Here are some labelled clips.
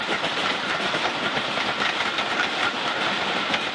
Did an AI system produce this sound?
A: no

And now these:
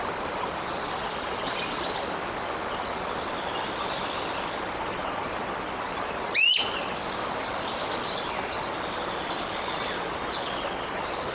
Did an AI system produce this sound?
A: no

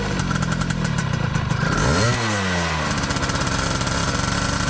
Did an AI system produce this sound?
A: no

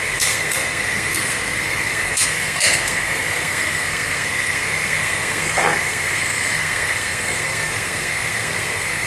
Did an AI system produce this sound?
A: yes